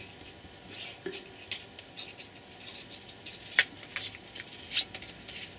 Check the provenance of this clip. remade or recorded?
recorded